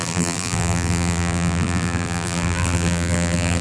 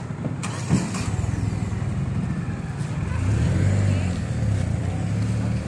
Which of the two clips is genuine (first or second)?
second